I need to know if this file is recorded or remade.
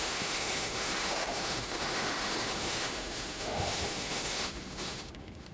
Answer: remade